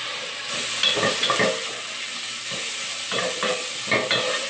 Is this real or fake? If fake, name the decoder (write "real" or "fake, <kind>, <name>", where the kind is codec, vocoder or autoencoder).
real